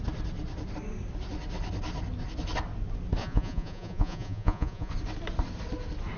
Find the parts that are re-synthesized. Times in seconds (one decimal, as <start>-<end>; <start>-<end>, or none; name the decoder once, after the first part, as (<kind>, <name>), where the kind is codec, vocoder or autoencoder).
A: 3.2-4.9 (vocoder, Vocos)

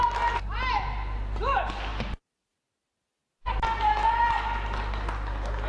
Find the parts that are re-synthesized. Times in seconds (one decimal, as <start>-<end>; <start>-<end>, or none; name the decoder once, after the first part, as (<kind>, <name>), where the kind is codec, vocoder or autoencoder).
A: none

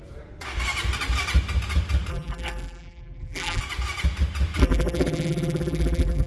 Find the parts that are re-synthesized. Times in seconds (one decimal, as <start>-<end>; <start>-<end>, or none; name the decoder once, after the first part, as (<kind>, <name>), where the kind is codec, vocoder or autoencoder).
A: 2.1-3.6 (vocoder, BigVGAN v2); 4.6-6.3

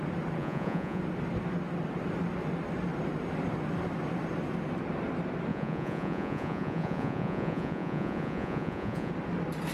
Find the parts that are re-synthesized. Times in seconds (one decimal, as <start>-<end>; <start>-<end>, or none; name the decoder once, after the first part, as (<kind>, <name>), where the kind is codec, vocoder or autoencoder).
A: 0.4-1.0 (vocoder, Vocos); 5.5-9.1

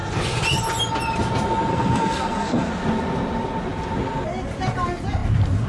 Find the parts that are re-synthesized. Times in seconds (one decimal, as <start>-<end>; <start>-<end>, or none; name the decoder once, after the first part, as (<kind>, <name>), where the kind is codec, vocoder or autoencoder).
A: 1.7-2.7 (codec, SNAC)